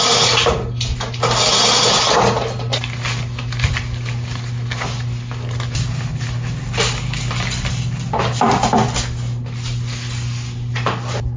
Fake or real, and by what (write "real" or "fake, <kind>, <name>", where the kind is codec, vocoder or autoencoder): real